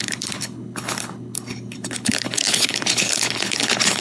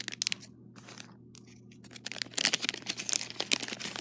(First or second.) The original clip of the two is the second